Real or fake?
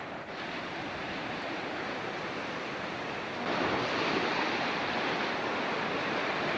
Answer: real